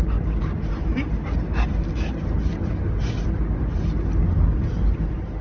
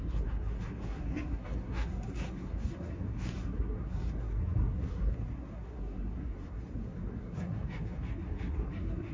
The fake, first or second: second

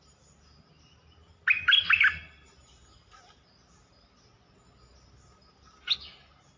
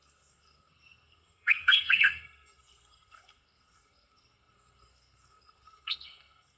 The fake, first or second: second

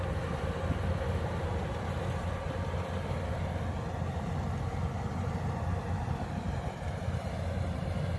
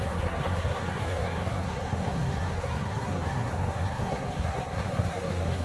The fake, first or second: second